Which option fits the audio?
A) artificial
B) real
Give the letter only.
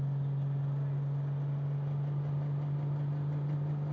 B